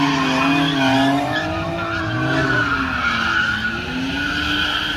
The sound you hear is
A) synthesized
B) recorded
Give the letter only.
B